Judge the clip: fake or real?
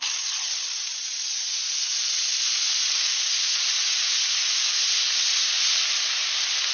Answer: real